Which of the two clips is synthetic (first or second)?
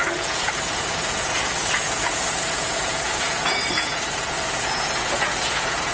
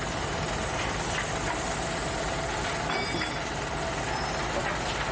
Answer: first